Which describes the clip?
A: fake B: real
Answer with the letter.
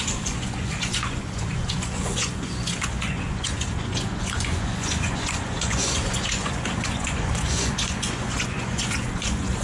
A